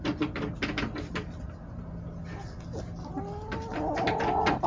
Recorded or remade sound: recorded